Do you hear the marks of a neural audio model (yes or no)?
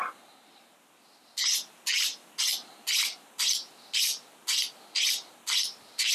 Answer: no